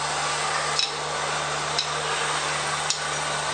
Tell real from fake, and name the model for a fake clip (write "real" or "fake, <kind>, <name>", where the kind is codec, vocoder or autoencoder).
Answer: real